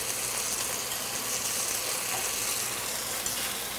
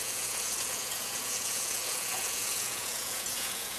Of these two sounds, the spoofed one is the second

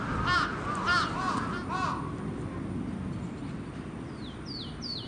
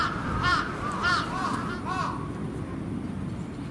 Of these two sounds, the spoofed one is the second